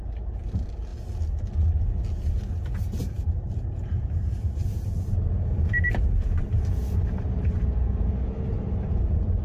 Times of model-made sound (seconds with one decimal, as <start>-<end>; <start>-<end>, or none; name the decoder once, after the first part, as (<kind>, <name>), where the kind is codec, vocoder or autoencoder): 0.0-0.9 (vocoder, BigVGAN v2); 3.0-9.4